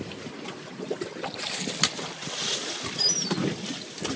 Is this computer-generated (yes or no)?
no